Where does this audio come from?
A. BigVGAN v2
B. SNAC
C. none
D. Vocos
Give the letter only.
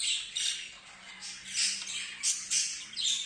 C